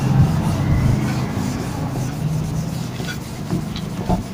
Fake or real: real